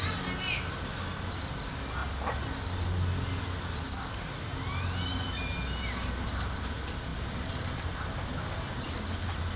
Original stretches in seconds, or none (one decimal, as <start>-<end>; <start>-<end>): 0.0-9.6